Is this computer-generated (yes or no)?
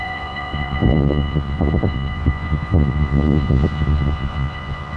yes